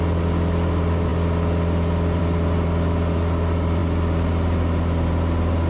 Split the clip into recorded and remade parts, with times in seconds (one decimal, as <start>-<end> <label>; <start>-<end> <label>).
0.0-5.7 recorded